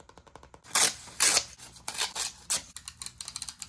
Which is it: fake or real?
real